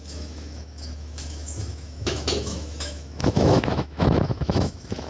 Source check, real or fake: fake